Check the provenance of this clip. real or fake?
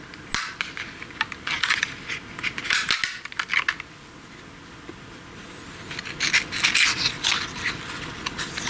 real